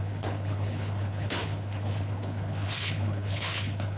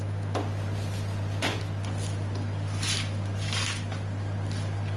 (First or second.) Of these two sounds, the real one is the second